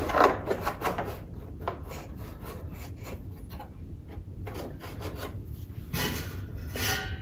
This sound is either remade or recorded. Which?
recorded